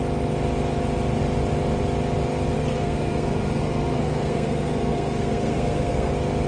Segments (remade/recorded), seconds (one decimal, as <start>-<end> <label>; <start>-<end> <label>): 0.0-2.6 recorded; 2.6-6.1 remade; 6.1-6.5 recorded